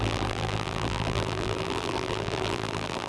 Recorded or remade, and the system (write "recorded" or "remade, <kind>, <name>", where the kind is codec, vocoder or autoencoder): remade, vocoder, BigVGAN v2